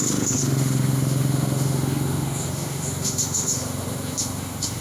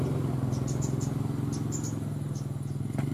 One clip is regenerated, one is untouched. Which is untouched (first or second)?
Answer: second